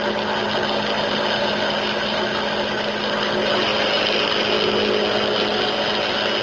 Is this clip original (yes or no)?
yes